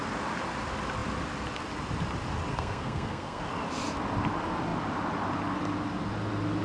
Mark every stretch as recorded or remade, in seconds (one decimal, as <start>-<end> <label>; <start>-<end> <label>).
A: 0.0-2.5 recorded; 2.5-3.4 remade; 3.4-6.6 recorded